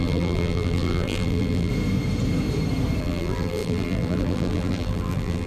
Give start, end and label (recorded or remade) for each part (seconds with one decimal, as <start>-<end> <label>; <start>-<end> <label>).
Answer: 0.0-1.7 remade; 1.7-3.0 recorded; 3.0-5.5 remade